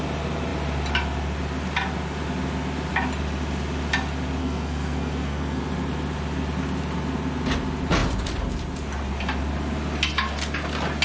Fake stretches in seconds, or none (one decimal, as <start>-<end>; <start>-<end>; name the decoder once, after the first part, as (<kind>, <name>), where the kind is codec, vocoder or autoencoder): 4.4-5.6 (codec, SNAC)